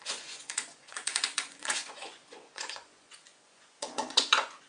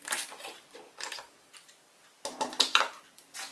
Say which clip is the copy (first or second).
first